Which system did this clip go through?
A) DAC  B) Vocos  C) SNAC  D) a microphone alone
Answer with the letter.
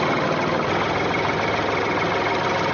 D